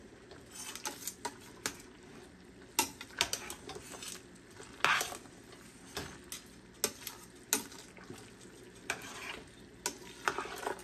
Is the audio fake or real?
real